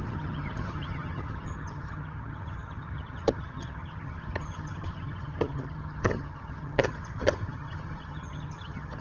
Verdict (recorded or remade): remade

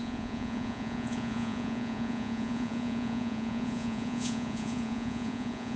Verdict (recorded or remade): remade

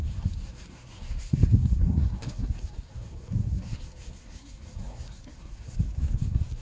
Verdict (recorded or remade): remade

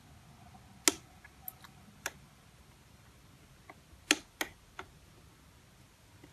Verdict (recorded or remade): recorded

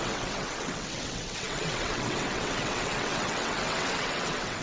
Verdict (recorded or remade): remade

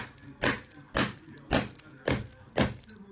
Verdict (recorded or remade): recorded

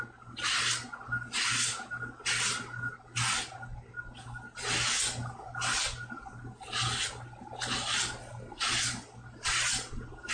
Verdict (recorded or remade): recorded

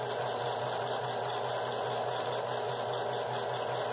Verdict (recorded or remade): recorded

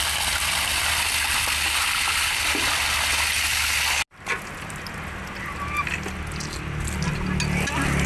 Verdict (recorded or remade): recorded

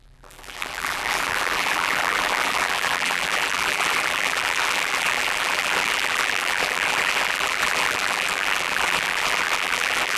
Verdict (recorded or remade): remade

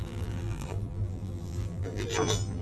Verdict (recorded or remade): remade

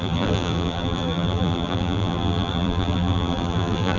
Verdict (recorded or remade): remade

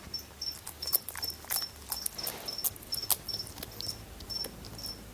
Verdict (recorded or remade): recorded